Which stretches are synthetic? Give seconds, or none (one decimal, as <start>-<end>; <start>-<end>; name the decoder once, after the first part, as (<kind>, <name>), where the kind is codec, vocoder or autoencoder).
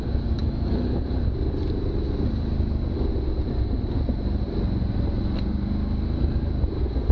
0.4-1.0 (autoencoder, DAC-VAE)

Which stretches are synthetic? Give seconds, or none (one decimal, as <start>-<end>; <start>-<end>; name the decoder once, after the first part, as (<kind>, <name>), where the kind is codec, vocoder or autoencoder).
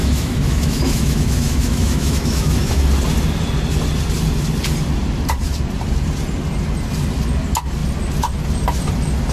0.0-2.8 (autoencoder, DAC-VAE)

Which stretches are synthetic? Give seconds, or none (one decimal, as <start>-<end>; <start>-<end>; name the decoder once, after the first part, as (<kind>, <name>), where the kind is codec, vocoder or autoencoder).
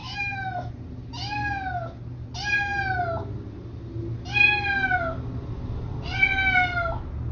0.0-0.7 (autoencoder, DAC-VAE)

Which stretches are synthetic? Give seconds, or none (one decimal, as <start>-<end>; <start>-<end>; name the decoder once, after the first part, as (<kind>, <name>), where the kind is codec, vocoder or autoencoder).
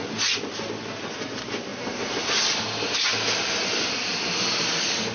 none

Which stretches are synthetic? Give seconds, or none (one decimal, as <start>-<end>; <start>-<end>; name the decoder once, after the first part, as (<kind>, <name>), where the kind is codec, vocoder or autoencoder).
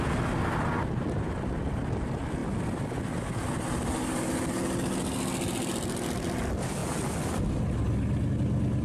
none